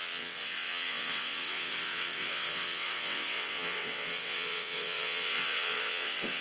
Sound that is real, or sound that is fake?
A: fake